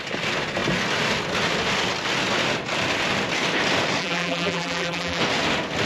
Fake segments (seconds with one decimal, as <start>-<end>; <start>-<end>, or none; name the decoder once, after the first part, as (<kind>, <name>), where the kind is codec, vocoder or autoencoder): 4.0-5.2 (vocoder, BigVGAN v2)